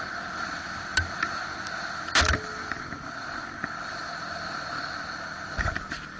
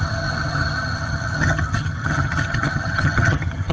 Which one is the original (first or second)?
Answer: first